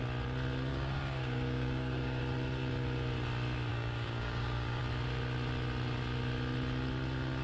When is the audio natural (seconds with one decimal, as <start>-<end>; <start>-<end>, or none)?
0.0-0.7; 2.2-3.7; 4.8-7.4